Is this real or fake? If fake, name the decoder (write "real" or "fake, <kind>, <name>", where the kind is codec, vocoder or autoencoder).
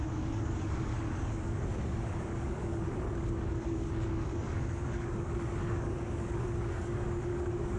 fake, codec, DAC